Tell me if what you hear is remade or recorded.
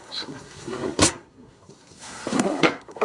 remade